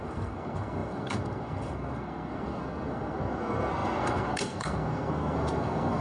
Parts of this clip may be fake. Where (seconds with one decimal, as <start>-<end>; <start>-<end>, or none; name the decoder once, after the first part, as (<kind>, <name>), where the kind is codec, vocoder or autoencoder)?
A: 0.0-6.0 (codec, SNAC)